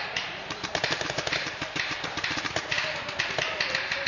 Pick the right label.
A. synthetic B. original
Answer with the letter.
B